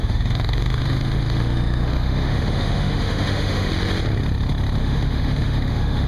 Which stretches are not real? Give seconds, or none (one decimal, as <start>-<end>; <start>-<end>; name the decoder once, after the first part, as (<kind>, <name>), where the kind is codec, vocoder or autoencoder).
0.0-3.7 (autoencoder, DAC-VAE); 4.8-6.1